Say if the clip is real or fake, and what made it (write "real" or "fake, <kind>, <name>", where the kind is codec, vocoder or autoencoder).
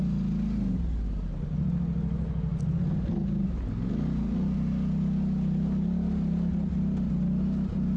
real